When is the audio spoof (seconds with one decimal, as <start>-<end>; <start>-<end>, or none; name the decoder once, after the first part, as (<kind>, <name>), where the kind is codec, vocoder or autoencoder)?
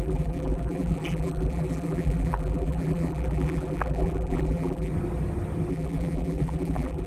0.0-4.9 (vocoder, BigVGAN v2); 5.7-7.1